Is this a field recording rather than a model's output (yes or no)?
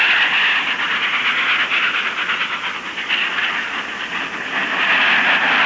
yes